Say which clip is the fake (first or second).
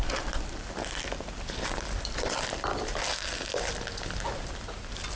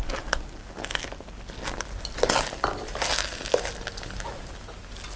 first